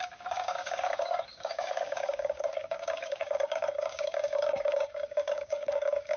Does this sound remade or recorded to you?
remade